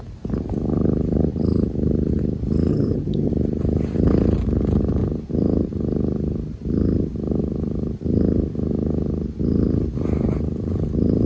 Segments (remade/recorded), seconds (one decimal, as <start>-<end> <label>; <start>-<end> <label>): 0.0-2.7 recorded; 2.7-3.3 remade; 3.3-11.3 recorded